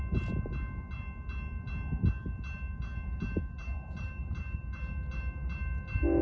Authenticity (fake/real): real